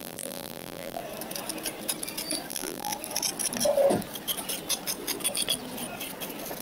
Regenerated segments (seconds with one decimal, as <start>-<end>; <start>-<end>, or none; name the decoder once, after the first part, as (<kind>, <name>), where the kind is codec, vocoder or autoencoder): 0.0-1.0 (vocoder, BigVGAN v2); 2.5-2.9